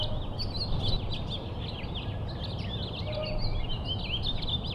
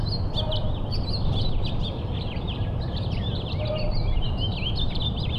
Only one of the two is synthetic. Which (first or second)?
second